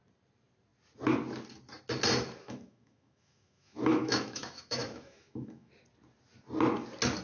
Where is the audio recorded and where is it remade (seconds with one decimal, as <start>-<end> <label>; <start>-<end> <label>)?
0.0-2.4 recorded; 2.4-5.7 remade; 5.7-7.2 recorded